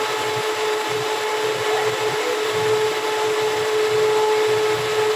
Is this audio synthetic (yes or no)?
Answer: no